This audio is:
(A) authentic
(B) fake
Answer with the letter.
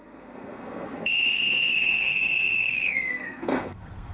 B